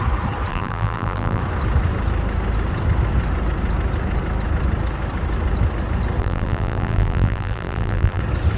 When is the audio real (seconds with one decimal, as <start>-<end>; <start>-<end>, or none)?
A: 0.0-0.5; 1.4-6.2; 8.2-8.6